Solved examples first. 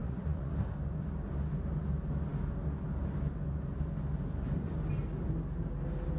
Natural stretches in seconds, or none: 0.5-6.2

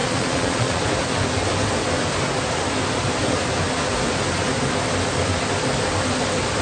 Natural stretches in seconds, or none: 0.8-6.6

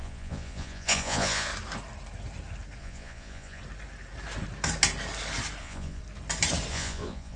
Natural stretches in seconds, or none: 1.5-2.8; 3.6-5.6; 6.0-6.7

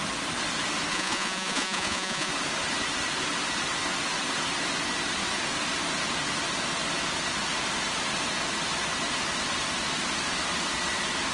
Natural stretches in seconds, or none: 0.0-0.9; 2.3-11.3

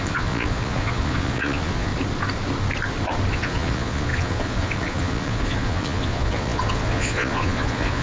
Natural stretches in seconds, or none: 1.9-3.3

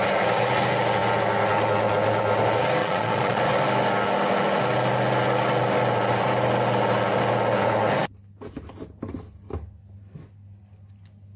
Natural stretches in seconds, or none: 0.0-2.8; 3.4-11.4